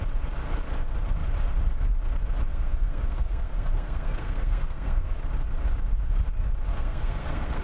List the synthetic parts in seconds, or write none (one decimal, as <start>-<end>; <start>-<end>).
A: 2.5-5.2; 6.7-7.6